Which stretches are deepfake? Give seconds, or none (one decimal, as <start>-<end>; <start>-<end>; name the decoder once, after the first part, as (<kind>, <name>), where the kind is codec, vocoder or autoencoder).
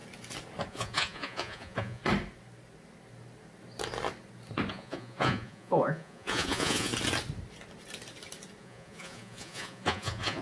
0.7-2.0 (vocoder, Vocos); 4.7-6.9; 8.6-10.4